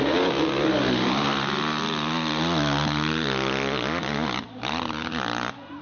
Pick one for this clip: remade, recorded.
recorded